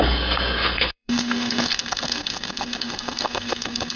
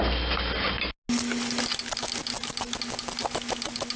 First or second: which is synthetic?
first